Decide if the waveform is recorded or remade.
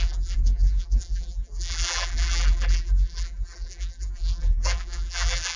remade